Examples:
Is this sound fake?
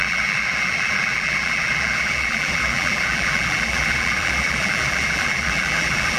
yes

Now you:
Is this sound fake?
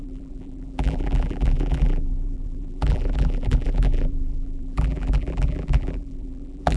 yes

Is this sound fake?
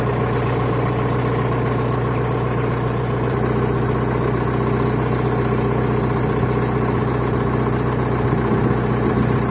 no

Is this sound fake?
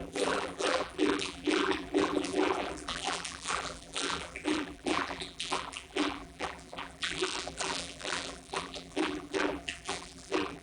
yes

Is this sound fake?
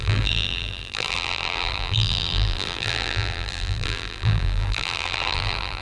yes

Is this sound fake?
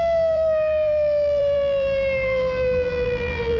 yes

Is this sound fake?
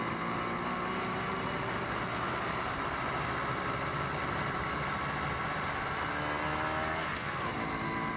no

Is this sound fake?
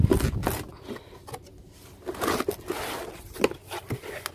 no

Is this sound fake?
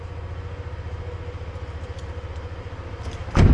no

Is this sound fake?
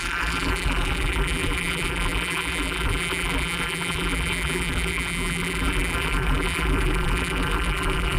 yes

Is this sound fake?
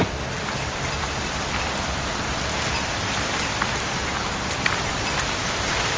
yes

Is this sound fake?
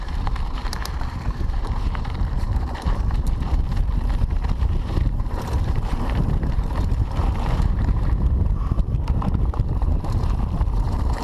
yes